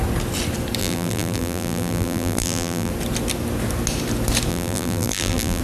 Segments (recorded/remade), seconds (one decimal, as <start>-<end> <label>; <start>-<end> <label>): 0.0-0.8 recorded; 0.8-2.9 remade; 2.9-4.5 recorded; 4.5-5.6 remade